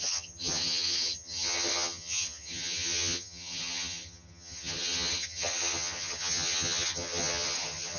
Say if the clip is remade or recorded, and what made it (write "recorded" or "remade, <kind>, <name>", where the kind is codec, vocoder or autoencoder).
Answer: remade, vocoder, HiFi-GAN